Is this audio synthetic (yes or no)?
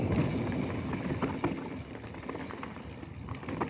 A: no